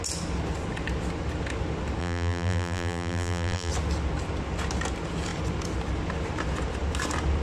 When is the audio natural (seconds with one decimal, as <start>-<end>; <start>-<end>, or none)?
0.0-2.0; 3.7-7.4